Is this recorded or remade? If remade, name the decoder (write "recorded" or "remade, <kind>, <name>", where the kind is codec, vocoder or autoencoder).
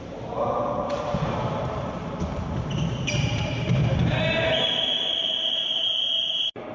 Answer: remade, vocoder, BigVGAN v2